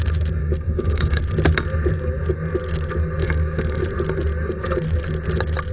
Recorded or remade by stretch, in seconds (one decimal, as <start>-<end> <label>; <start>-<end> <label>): 0.0-0.4 recorded; 0.4-1.2 remade; 1.2-3.2 recorded; 3.2-3.8 remade; 3.8-5.7 recorded